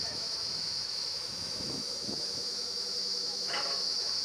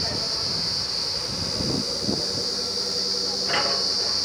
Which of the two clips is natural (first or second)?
second